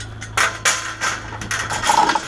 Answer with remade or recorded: recorded